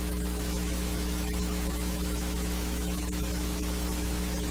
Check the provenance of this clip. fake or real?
fake